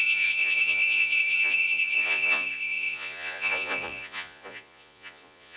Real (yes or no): no